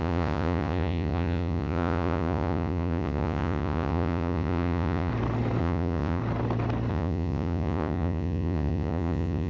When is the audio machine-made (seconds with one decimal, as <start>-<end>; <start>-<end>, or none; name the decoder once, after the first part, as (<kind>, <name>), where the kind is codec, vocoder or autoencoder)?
0.0-5.1 (vocoder, Vocos); 5.6-6.2; 6.9-9.5

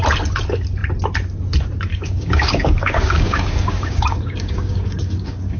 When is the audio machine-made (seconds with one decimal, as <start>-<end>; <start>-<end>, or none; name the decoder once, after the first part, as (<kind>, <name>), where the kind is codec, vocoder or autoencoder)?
1.9-5.6 (codec, DAC)